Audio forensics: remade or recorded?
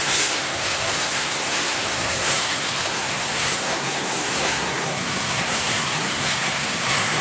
remade